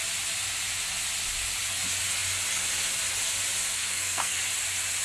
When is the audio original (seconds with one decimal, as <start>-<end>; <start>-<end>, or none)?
0.0-3.7; 4.4-5.0